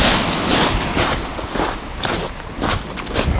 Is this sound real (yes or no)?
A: yes